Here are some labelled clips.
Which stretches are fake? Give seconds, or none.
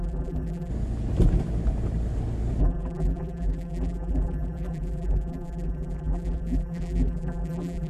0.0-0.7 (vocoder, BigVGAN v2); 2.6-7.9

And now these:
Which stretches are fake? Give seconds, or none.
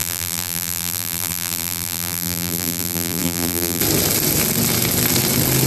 0.0-3.8 (vocoder, BigVGAN v2)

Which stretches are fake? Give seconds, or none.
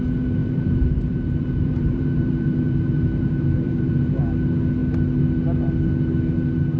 0.4-4.2 (vocoder, BigVGAN v2)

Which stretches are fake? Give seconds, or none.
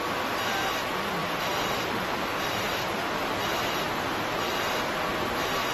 1.2-4.6 (vocoder, BigVGAN v2)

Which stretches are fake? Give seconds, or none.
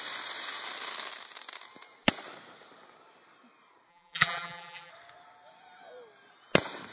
3.9-4.9 (vocoder, BigVGAN v2)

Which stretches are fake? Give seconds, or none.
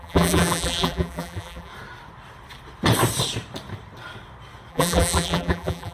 0.0-1.7 (vocoder, BigVGAN v2); 4.7-5.9